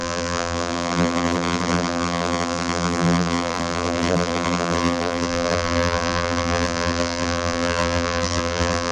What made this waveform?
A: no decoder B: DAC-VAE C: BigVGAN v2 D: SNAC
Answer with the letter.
C